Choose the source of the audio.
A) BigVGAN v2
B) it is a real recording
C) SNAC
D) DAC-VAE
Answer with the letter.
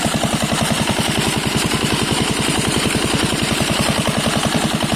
A